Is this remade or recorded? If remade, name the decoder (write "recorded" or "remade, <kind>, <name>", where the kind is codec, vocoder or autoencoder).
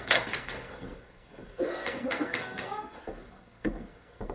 remade, codec, SNAC